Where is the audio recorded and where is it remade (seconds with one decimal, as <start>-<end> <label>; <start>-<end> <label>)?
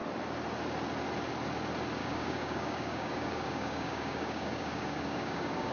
0.0-2.0 recorded; 2.0-5.7 remade